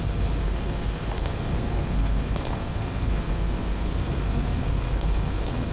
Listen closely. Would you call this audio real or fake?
fake